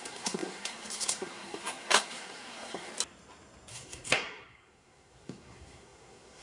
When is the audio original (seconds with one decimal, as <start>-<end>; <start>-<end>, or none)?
2.9-3.7